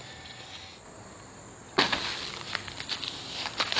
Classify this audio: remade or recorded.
recorded